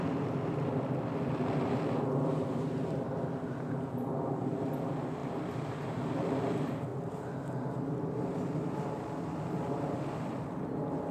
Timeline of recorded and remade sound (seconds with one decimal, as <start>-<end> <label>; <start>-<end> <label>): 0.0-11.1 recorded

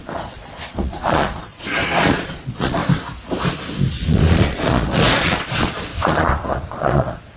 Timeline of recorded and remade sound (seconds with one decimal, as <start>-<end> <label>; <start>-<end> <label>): 0.0-2.8 remade; 2.8-3.9 recorded; 3.9-7.4 remade

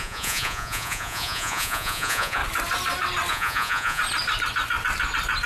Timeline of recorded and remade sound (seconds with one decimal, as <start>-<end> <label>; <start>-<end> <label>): 0.0-2.4 remade; 2.4-3.3 recorded; 3.3-4.0 remade; 4.0-5.5 recorded

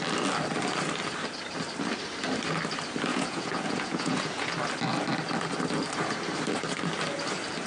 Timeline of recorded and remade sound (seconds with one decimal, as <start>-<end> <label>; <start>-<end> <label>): 0.0-3.1 recorded; 3.1-4.5 remade; 4.5-7.7 recorded